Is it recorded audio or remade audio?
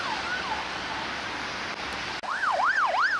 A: recorded